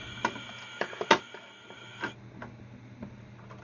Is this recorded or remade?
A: recorded